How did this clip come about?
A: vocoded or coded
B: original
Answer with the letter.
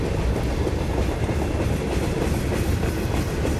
A